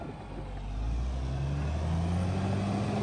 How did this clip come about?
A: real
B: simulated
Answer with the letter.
A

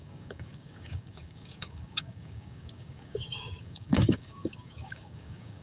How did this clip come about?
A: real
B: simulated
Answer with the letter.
B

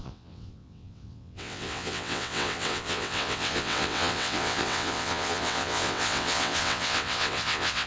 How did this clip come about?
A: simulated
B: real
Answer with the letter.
A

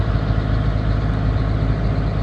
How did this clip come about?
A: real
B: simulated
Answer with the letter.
A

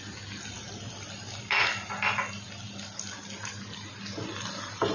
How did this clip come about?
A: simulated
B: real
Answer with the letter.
B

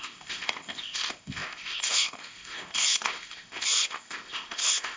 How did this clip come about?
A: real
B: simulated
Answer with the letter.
B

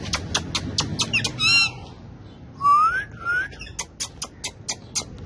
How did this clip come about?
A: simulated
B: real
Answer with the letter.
B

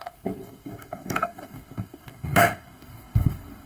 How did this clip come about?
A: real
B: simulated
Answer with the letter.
B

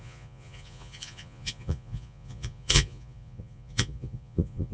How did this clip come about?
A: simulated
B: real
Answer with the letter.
A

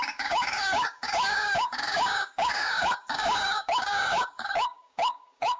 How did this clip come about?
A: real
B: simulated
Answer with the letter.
B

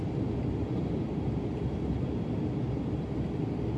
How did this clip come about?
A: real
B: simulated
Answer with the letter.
A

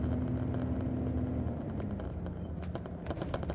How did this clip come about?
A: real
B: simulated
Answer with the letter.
A